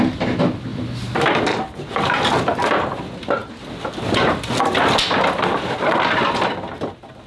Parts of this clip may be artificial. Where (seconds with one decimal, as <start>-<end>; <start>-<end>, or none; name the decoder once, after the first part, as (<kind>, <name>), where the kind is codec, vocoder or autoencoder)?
none